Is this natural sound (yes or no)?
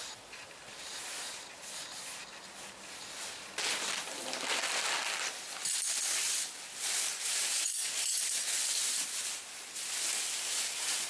yes